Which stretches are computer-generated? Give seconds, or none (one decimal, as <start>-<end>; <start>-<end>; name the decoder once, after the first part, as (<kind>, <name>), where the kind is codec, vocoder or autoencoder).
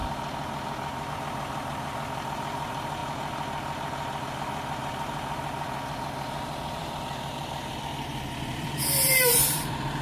1.1-3.0 (vocoder, BigVGAN v2); 4.3-10.0